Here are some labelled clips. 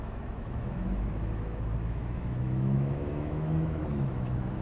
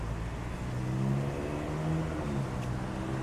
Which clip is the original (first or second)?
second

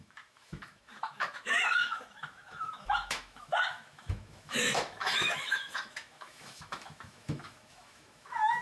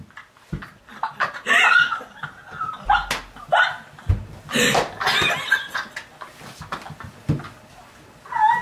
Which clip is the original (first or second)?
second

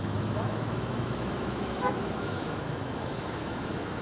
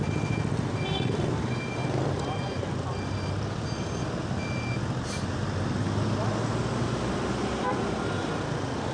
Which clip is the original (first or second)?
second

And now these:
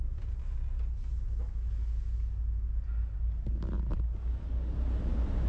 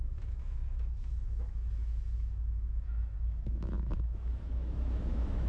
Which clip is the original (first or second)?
first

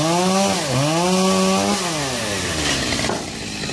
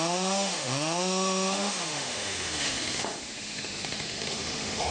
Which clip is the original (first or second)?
first